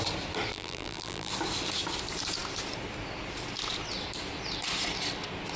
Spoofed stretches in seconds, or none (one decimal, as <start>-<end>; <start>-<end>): 0.5-1.3